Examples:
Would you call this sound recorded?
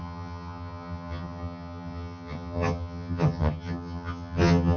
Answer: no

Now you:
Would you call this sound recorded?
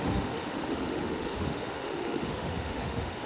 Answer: no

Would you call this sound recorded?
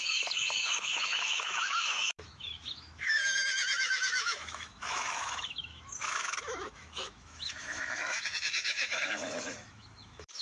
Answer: no